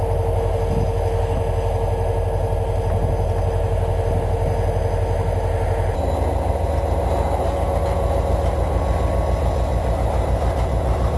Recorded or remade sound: recorded